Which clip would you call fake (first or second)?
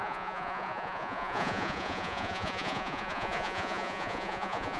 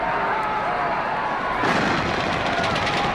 first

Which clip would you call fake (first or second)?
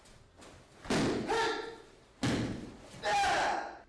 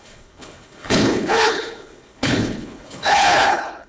second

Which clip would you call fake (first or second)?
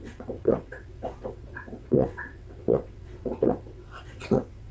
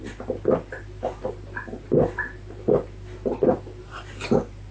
first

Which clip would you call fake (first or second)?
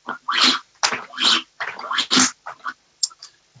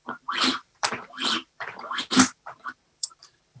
second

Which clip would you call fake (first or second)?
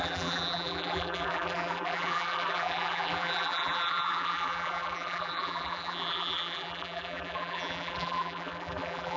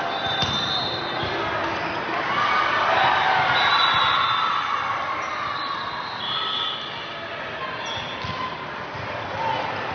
first